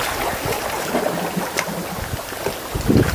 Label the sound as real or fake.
real